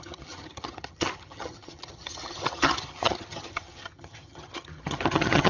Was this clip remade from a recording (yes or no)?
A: yes